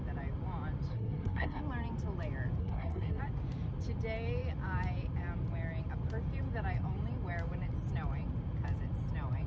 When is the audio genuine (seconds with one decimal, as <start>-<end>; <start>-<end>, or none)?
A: 0.0-0.9; 1.6-2.6; 3.2-9.5